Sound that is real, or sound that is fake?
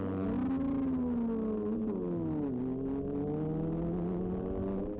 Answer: real